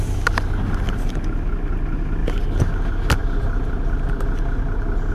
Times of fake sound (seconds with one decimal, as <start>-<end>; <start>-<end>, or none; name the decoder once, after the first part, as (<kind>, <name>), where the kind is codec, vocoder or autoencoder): 3.2-4.2 (vocoder, BigVGAN v2)